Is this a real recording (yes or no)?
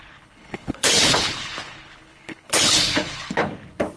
no